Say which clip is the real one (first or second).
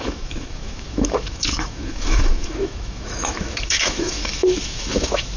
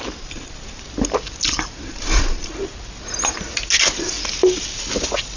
second